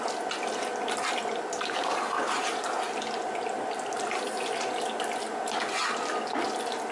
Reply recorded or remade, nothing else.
recorded